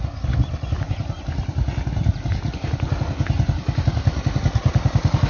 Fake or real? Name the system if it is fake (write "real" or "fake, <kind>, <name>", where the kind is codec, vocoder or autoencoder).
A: real